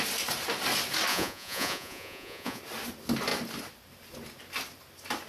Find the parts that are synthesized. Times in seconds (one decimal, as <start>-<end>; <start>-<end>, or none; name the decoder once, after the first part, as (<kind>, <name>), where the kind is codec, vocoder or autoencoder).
1.1-2.6 (vocoder, Vocos)